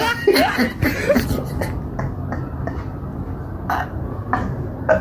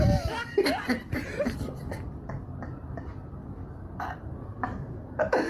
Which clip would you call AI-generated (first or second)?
second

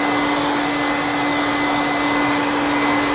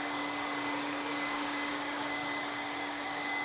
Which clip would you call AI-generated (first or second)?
second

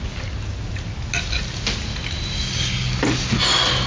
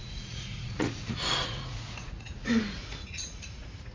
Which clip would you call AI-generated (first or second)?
second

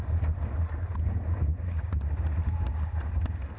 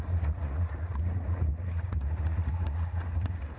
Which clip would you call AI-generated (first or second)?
second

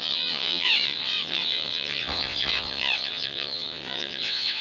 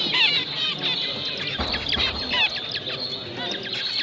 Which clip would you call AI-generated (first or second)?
first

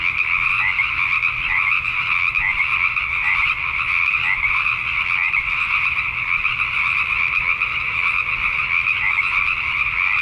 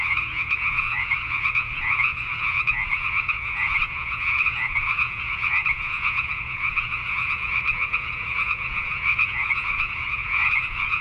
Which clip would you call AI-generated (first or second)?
second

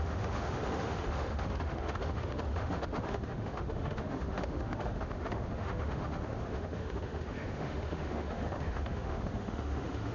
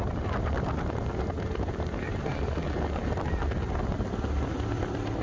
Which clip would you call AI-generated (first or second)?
first